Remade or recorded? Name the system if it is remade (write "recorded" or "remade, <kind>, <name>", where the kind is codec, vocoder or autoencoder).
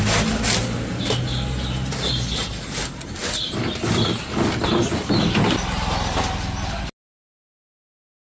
recorded